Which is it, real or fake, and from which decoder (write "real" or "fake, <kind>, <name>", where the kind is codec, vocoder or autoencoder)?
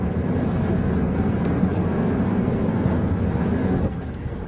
fake, codec, SNAC